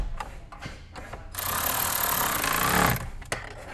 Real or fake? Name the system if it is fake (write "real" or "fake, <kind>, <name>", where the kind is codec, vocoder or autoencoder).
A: real